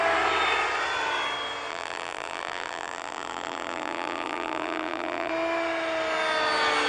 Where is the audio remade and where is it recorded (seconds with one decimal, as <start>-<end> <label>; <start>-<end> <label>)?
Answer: 0.0-1.7 recorded; 1.7-5.3 remade; 5.3-6.9 recorded